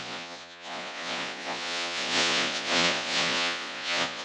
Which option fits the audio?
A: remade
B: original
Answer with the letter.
A